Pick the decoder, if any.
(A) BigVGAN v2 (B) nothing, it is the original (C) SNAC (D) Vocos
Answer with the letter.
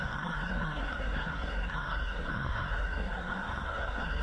C